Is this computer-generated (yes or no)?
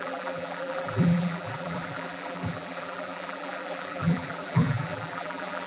yes